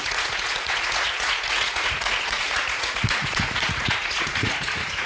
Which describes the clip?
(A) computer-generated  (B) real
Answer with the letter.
A